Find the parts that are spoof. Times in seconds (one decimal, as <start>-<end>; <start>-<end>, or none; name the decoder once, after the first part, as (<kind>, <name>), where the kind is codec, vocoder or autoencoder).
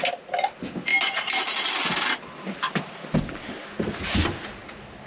none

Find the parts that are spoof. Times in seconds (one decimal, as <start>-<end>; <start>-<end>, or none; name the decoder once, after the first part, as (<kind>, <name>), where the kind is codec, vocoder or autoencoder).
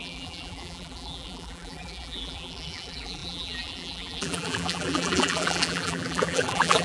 0.0-6.8 (vocoder, BigVGAN v2)